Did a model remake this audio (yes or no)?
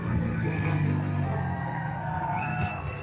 yes